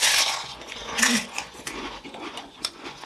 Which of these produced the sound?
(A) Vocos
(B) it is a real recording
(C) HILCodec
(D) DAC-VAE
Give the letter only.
A